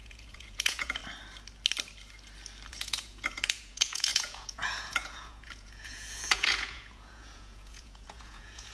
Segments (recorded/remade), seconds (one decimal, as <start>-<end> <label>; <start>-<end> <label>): 0.0-1.0 remade; 1.0-2.7 recorded; 2.7-8.7 remade